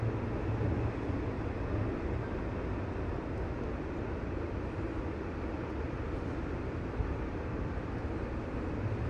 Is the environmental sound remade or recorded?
recorded